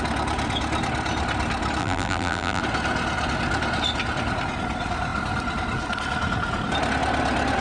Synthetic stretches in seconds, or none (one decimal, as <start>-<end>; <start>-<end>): 1.8-2.6